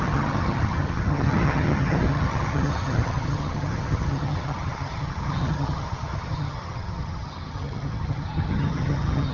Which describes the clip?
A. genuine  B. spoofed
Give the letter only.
B